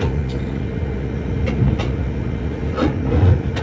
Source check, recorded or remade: remade